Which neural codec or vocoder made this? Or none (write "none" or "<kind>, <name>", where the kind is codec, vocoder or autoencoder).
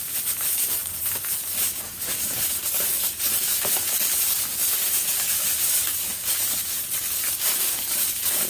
codec, DAC